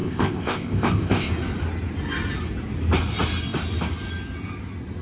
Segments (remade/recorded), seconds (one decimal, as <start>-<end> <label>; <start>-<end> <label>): 0.0-1.3 remade; 1.3-5.0 recorded

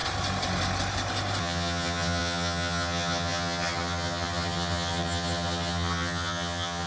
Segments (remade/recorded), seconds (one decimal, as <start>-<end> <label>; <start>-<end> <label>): 0.0-1.4 recorded; 1.4-6.9 remade

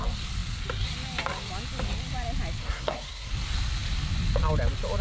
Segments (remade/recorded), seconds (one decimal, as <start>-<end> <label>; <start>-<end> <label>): 0.0-2.6 recorded; 2.6-3.3 remade; 3.3-5.0 recorded

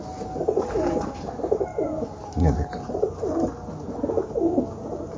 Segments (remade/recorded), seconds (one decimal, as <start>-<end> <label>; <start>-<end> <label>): 0.0-5.2 recorded

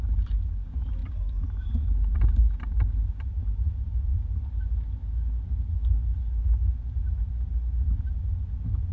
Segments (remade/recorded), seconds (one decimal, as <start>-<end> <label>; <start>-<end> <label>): 0.0-1.0 recorded; 1.0-1.7 remade; 1.7-8.9 recorded